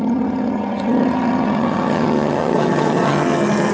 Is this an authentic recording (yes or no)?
no